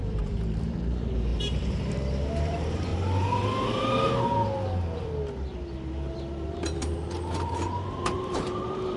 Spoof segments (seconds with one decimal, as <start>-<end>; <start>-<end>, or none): 0.0-2.9; 6.5-9.0